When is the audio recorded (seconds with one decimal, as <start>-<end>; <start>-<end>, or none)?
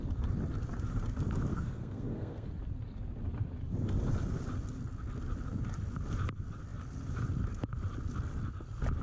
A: 0.0-1.5; 2.5-9.0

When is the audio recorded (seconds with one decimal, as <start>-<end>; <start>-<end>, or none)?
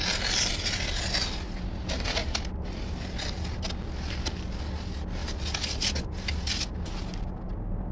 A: 0.0-7.9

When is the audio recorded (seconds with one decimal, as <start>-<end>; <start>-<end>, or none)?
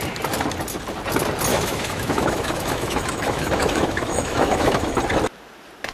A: 0.0-1.5; 5.0-5.9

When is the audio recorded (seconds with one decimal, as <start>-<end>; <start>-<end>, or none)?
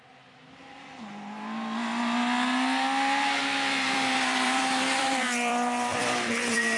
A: 0.0-3.4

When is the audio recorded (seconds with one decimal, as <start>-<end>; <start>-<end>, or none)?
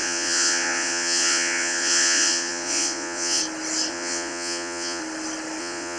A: 3.4-3.9; 5.0-5.6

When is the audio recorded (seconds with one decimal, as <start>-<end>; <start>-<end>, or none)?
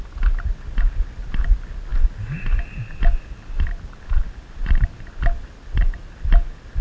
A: 0.0-6.8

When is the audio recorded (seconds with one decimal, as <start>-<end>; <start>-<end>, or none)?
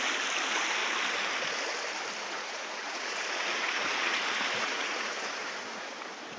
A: 0.0-2.2; 6.0-6.4